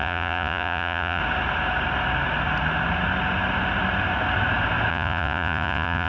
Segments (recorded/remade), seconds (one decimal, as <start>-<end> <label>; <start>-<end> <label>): 0.0-1.2 remade; 1.2-4.9 recorded; 4.9-6.1 remade